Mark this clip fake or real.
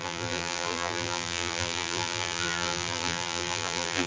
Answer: fake